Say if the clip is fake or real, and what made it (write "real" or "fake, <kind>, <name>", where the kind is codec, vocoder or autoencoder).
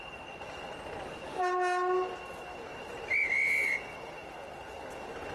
real